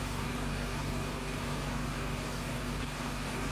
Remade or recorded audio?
remade